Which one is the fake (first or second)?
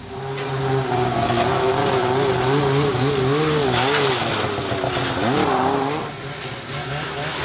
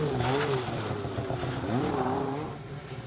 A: second